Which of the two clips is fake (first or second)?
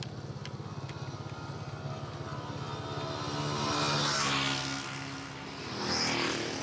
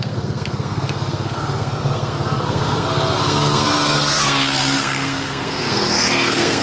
second